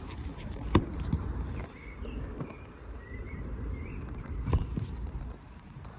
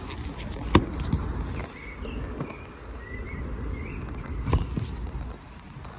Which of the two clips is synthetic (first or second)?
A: first